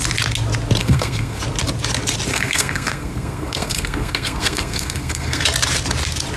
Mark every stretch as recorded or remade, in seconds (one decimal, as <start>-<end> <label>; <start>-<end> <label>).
0.0-0.8 recorded; 0.8-1.4 remade; 1.4-2.3 recorded; 2.3-5.4 remade; 5.4-6.4 recorded